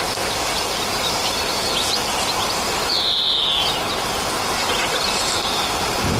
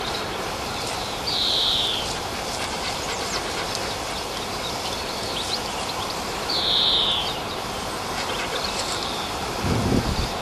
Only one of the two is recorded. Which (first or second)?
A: first